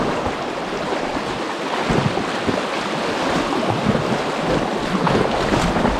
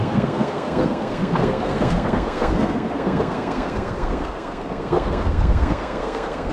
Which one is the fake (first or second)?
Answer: second